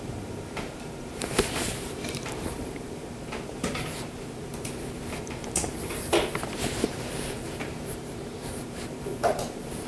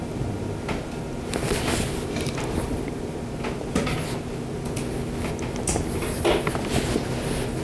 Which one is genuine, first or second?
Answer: second